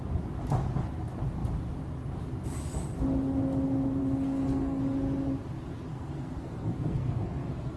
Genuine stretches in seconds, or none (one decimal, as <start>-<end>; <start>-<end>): 0.0-4.0; 4.8-5.9